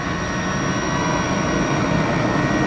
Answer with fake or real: real